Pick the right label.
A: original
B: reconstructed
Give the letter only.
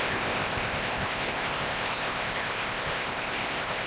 B